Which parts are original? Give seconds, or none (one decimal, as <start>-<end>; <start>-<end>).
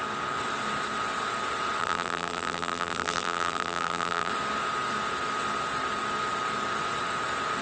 0.0-1.8; 4.3-7.6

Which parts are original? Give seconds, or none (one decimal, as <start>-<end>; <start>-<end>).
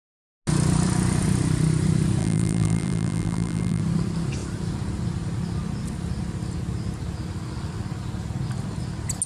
0.0-2.2; 3.8-9.3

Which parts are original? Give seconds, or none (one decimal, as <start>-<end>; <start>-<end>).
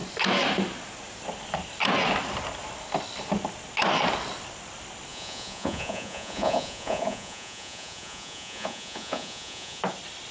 0.0-5.1; 9.8-10.3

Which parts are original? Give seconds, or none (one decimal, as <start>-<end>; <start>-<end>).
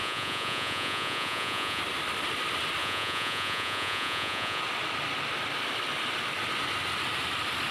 1.8-2.8; 4.6-7.7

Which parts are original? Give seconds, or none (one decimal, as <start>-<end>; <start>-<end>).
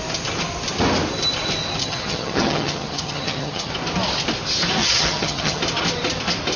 0.0-1.8; 3.7-4.8; 5.6-6.6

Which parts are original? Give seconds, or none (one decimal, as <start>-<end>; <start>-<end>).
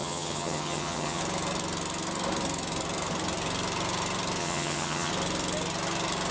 1.2-4.4; 5.1-6.3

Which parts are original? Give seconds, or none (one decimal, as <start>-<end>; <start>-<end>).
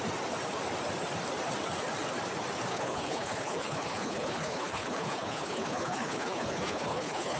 0.0-2.7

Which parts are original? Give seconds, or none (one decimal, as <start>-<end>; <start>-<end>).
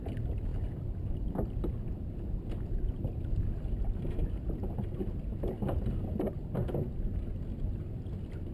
0.0-4.2; 5.1-8.5